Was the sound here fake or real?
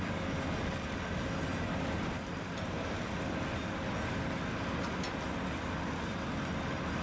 real